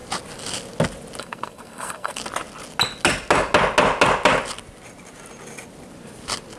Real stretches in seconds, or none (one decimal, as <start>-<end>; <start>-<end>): 0.0-1.2; 2.2-6.6